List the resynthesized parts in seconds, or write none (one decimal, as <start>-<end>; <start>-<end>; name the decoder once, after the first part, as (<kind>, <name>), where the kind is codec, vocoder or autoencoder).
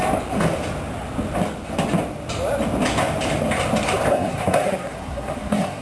4.1-5.8 (codec, SNAC)